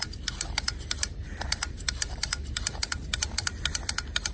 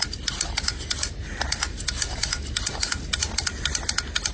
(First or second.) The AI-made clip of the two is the first